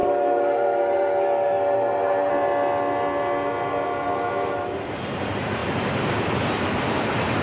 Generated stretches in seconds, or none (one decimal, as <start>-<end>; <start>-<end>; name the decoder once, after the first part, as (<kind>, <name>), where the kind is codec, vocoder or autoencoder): 0.0-2.3 (codec, SNAC)